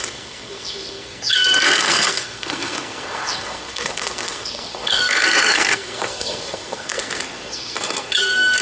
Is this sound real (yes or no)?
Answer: no